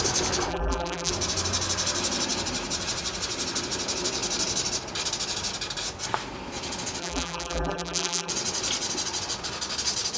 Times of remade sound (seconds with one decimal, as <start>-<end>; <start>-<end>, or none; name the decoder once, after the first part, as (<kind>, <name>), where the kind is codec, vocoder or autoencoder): 0.5-1.1 (vocoder, BigVGAN v2); 7.0-8.3